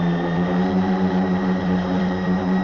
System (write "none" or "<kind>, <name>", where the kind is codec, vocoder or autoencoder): vocoder, BigVGAN v2